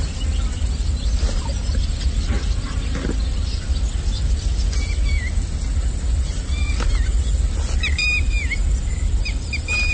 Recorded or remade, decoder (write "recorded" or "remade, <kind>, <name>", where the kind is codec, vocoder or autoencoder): recorded